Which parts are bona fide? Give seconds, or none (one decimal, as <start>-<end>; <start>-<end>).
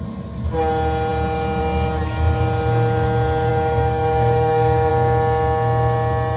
0.0-3.5; 4.9-6.4